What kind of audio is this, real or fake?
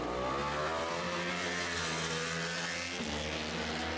real